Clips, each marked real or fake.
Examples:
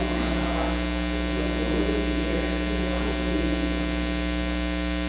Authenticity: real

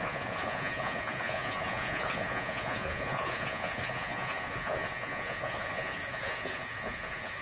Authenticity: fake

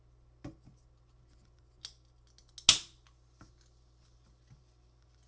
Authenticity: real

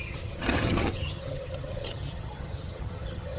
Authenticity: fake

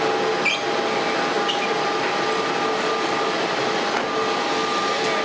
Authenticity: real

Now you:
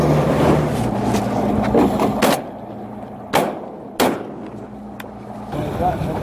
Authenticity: real